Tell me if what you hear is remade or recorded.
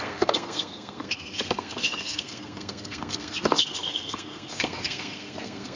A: remade